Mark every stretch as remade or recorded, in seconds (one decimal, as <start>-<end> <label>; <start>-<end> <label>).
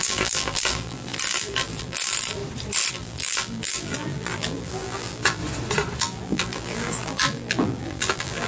0.0-2.4 remade; 2.4-2.9 recorded; 2.9-5.4 remade; 5.4-6.0 recorded; 6.0-8.5 remade